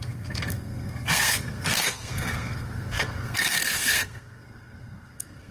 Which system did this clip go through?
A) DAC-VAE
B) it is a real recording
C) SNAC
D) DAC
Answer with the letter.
C